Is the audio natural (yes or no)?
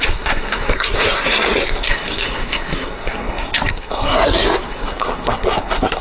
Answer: no